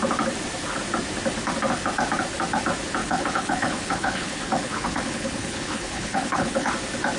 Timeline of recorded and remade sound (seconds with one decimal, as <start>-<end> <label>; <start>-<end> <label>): 0.0-3.0 recorded; 3.0-6.7 remade; 6.7-7.2 recorded